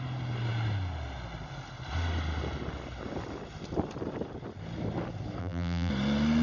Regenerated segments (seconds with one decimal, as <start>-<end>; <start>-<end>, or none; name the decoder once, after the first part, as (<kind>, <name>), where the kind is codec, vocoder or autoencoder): 5.4-5.9 (vocoder, BigVGAN v2)